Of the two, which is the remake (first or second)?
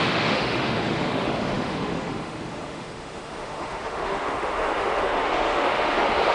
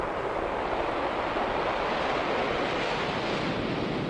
first